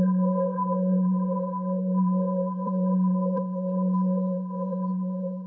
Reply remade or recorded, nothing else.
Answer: remade